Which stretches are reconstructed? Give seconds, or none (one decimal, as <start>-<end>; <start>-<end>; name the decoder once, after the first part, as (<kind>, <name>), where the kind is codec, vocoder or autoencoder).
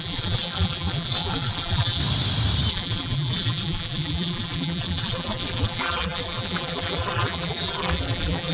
0.0-2.0 (vocoder, BigVGAN v2); 2.7-8.5